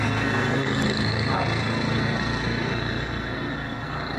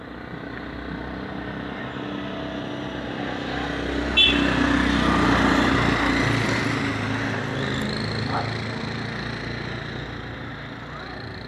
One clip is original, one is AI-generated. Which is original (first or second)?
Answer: second